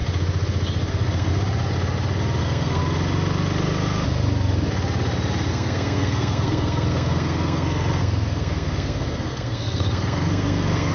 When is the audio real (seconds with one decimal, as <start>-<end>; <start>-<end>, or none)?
0.0-0.9; 1.3-2.4; 2.8-5.5